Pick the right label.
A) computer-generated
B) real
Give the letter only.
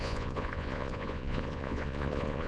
A